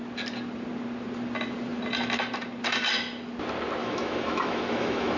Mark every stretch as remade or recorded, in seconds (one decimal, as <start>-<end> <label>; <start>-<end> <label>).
0.0-3.8 recorded; 3.8-5.2 remade